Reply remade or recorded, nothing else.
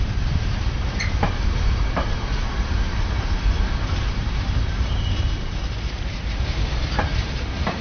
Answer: remade